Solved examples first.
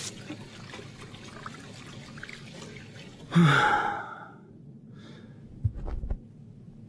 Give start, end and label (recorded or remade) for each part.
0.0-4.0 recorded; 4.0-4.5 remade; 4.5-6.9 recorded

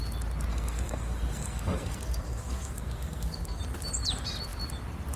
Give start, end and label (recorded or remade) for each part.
0.0-0.5 recorded; 0.5-3.6 remade; 3.6-5.2 recorded

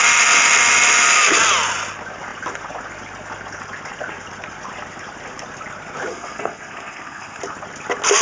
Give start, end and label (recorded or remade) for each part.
0.0-6.1 recorded; 6.1-7.4 remade; 7.4-8.2 recorded